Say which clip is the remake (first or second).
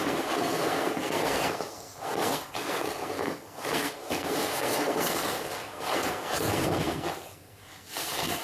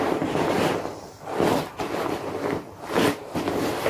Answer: first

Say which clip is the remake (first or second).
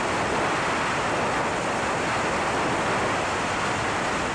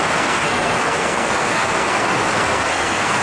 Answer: second